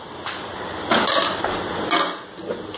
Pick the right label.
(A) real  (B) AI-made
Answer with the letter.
A